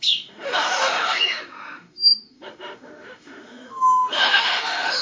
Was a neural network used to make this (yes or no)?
yes